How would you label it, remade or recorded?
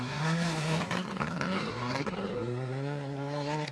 remade